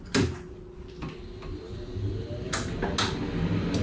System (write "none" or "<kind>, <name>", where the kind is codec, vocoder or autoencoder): none